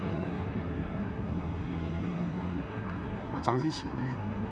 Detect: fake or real fake